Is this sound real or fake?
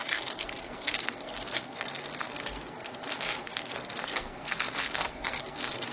fake